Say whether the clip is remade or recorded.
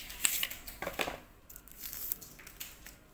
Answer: recorded